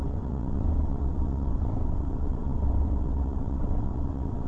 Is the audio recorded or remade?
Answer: remade